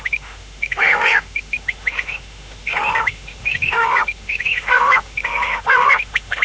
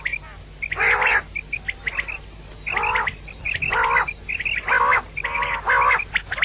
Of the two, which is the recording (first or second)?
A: second